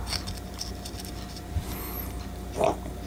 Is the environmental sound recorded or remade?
remade